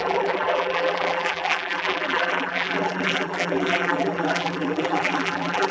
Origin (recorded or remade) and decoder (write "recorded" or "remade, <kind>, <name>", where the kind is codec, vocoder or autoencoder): remade, vocoder, BigVGAN v2